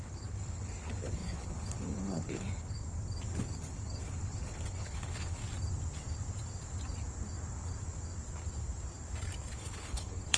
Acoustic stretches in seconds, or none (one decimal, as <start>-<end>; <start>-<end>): 2.8-3.4; 5.4-9.5